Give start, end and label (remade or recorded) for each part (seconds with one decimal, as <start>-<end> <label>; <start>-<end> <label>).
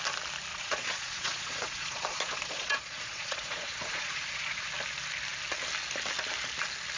0.0-0.5 recorded; 0.5-4.7 remade; 4.7-7.0 recorded